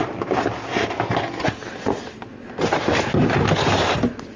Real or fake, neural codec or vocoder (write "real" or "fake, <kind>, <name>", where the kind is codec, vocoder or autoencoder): real